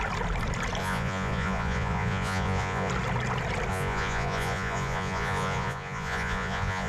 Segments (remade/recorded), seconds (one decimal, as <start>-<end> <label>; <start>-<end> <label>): 0.0-0.8 recorded; 0.8-2.9 remade; 2.9-3.7 recorded; 3.7-6.9 remade

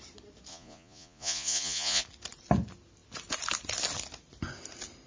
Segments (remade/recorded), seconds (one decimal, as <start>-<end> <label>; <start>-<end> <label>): 0.0-0.5 recorded; 0.5-2.0 remade; 2.0-5.1 recorded

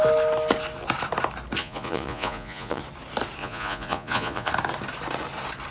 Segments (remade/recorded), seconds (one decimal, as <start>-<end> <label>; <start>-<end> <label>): 0.0-1.6 recorded; 1.6-2.8 remade; 2.8-3.4 recorded; 3.4-4.5 remade; 4.5-5.7 recorded

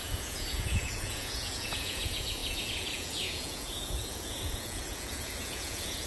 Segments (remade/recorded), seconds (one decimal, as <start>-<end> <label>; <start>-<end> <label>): 0.0-6.1 remade

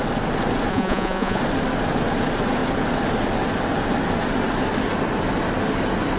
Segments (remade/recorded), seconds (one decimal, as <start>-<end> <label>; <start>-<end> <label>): 0.0-0.7 recorded; 0.7-1.4 remade; 1.4-6.2 recorded

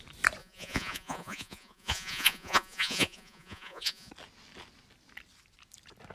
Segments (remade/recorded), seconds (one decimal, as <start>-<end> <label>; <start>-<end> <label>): 0.0-0.4 recorded; 0.4-4.1 remade; 4.1-6.1 recorded

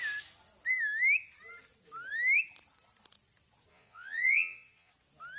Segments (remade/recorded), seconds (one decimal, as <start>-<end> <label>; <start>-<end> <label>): 0.0-3.7 recorded; 3.7-4.9 remade; 4.9-5.4 recorded

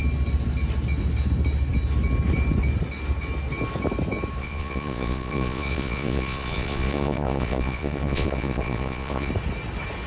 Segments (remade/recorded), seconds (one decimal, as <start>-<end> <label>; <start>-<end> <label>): 0.0-4.4 recorded; 4.4-9.3 remade; 9.3-10.1 recorded